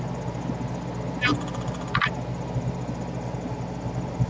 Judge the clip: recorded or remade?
recorded